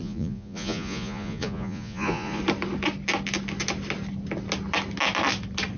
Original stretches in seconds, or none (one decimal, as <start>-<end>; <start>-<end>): 2.4-5.8